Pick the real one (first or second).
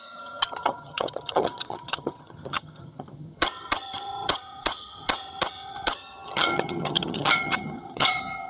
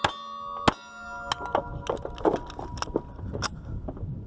second